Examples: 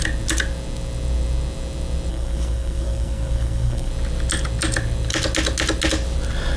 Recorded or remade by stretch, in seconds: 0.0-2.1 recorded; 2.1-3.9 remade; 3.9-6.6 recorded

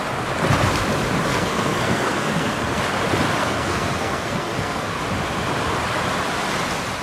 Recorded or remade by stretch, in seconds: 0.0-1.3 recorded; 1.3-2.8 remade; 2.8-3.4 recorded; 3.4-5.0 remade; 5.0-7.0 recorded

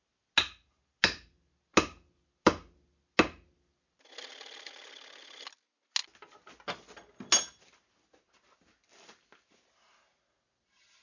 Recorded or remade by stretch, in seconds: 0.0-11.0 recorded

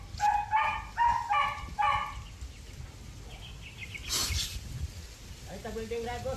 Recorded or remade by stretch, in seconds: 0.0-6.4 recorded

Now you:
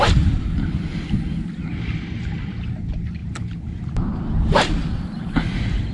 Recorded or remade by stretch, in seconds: 0.0-3.2 recorded; 3.2-4.7 remade; 4.7-5.9 recorded